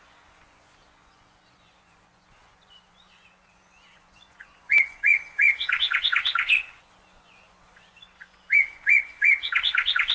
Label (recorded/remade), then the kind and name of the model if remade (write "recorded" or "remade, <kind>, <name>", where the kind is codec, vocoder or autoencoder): remade, vocoder, Vocos